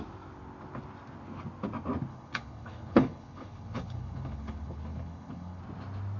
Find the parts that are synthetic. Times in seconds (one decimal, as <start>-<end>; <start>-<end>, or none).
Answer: 2.1-5.6